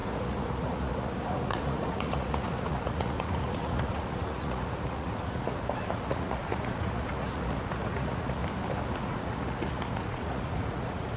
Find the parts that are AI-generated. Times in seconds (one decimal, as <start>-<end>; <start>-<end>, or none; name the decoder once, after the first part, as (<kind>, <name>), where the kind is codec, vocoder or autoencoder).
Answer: 0.0-8.4 (vocoder, Vocos); 8.9-11.2